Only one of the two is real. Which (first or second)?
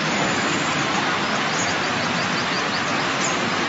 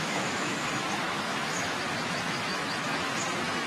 first